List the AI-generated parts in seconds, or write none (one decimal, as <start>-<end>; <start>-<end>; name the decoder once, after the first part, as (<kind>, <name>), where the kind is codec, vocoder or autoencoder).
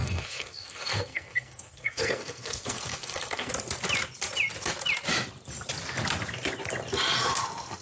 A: 0.0-3.5 (codec, SNAC)